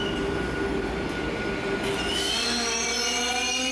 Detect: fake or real real